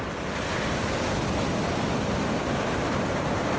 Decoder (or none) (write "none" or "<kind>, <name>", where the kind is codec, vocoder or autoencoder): none